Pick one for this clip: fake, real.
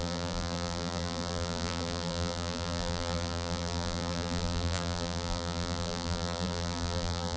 fake